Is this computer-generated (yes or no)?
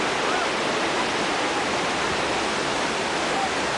no